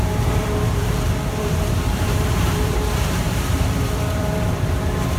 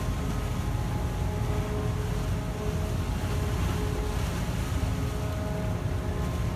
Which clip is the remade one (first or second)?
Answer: first